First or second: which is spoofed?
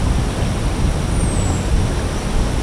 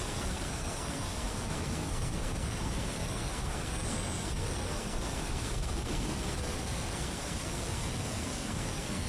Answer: second